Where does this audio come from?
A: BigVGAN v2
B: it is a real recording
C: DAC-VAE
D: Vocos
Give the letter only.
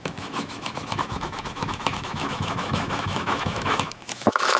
C